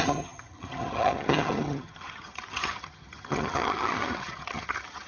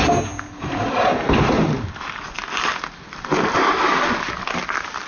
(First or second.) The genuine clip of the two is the second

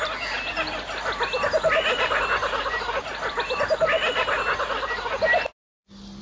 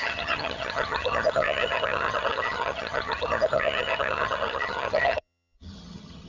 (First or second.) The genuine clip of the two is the first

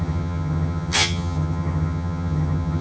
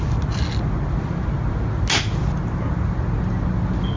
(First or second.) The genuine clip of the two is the second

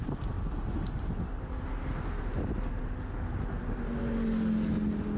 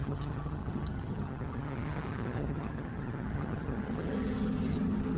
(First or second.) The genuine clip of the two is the first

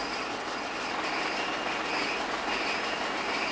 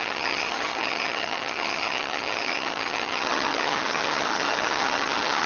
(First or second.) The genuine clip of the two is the first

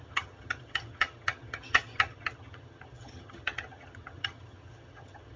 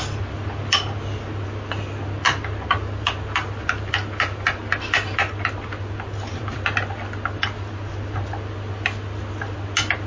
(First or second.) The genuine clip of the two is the second